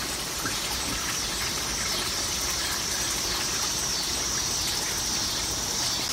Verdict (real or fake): real